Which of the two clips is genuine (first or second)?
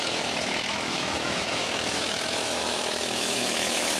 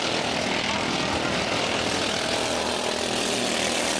second